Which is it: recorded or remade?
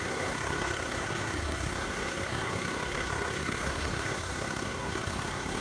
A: remade